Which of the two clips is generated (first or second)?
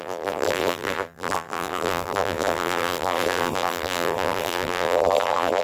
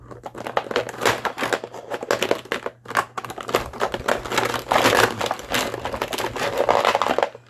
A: first